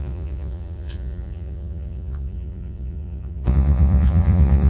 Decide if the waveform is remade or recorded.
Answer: remade